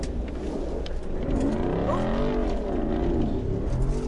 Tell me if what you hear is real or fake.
real